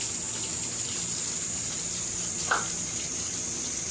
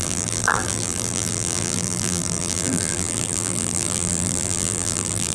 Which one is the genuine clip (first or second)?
first